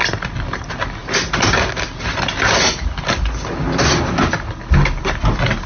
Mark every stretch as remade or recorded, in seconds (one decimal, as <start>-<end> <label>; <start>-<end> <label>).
0.0-5.7 recorded